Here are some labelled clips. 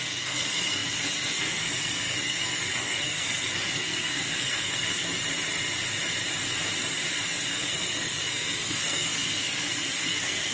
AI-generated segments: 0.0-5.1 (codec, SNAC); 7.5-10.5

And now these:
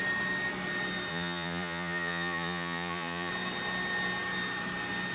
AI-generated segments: 1.1-3.3 (vocoder, Vocos)

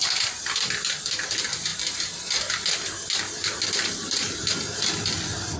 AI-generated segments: none

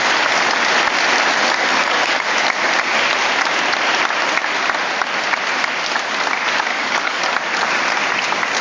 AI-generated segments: 1.7-2.3 (codec, DAC); 6.7-7.2

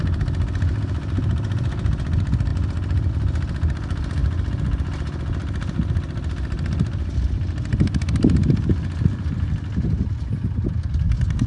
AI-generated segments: none

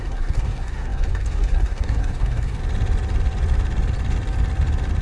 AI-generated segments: 0.0-2.6 (codec, SNAC)

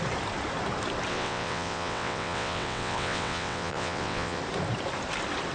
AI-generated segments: 1.1-4.4 (vocoder, WaveNeXt)

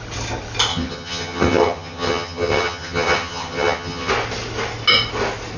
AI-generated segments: 0.7-4.1 (vocoder, HiFi-GAN)